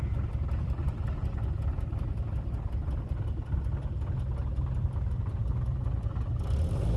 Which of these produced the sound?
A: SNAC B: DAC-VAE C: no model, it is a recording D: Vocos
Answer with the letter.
C